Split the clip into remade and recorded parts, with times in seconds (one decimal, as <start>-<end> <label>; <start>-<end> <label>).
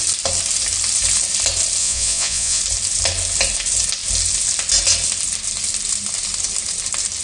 0.0-1.8 recorded; 1.8-2.6 remade; 2.6-7.2 recorded